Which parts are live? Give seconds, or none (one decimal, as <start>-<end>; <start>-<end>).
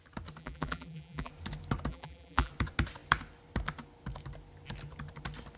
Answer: 0.0-0.4; 1.3-1.9; 2.5-5.6